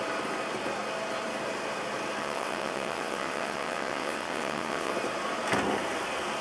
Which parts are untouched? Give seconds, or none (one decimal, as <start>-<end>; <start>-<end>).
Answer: 0.0-2.2; 4.9-6.4